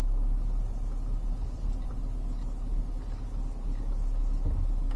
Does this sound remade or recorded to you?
recorded